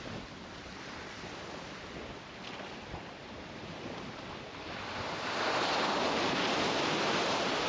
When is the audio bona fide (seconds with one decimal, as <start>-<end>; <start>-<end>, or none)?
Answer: 0.0-3.2

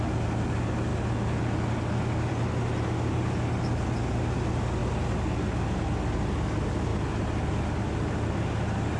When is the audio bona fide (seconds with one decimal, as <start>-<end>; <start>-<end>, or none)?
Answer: 0.0-9.0

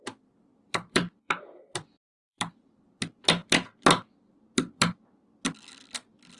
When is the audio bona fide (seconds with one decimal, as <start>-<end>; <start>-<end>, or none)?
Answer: 0.0-0.5; 2.7-6.4